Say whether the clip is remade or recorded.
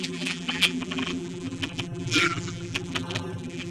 remade